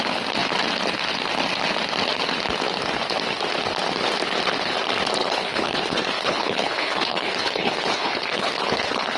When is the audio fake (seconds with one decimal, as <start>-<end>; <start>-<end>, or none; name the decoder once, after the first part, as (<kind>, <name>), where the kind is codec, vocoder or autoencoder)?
5.2-9.2 (codec, HILCodec)